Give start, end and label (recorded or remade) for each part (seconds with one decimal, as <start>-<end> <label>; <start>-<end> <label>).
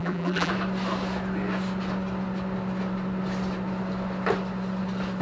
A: 0.0-0.5 remade; 0.5-5.2 recorded